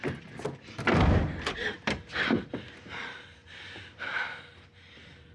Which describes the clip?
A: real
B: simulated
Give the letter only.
A